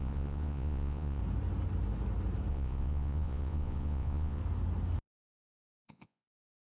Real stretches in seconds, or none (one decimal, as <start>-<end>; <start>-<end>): 1.2-2.5; 4.4-5.0